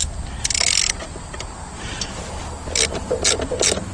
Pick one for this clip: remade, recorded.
recorded